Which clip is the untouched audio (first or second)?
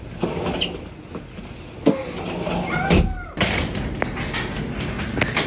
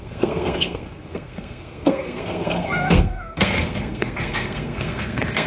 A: first